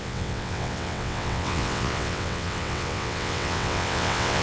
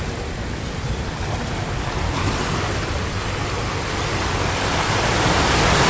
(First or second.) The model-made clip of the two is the first